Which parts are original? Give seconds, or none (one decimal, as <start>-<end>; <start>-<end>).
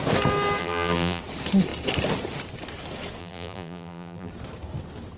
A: 0.0-0.6; 1.2-3.2; 4.3-5.2